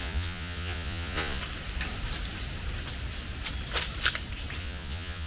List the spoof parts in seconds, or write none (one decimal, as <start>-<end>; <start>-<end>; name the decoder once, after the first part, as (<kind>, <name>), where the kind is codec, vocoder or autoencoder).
0.0-1.4 (vocoder, Vocos); 4.6-5.3